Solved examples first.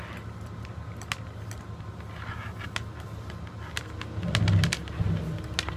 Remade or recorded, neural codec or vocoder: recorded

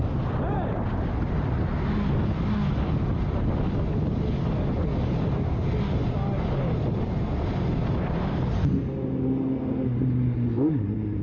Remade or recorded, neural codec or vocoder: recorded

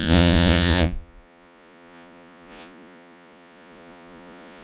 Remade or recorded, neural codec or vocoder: remade, vocoder, Vocos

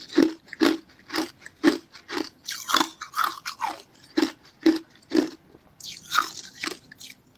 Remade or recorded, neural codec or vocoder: recorded